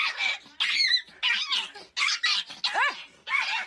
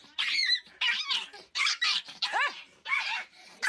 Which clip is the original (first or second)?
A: first